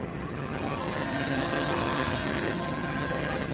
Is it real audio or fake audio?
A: fake